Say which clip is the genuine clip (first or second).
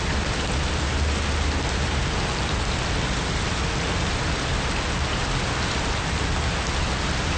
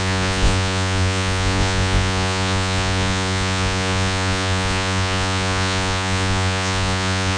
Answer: first